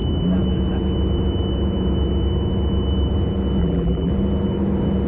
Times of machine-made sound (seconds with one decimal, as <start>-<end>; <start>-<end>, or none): 3.6-4.1